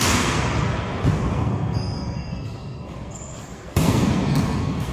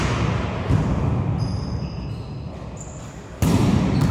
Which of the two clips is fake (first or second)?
first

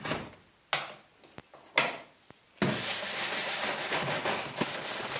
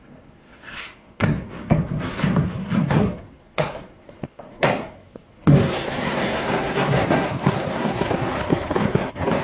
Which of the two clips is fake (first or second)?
second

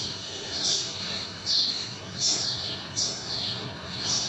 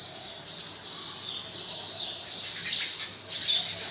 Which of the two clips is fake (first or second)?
first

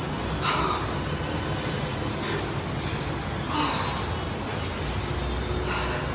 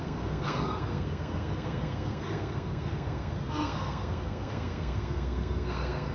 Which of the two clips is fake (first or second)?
second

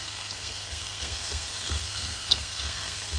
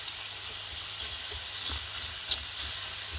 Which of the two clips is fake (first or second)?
first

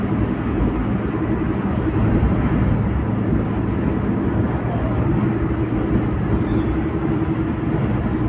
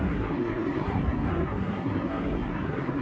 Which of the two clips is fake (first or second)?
second